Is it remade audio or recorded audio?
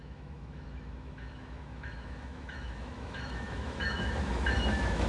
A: remade